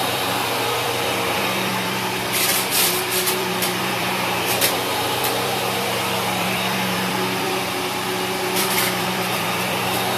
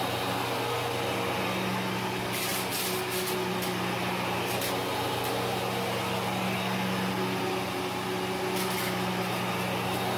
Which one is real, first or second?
second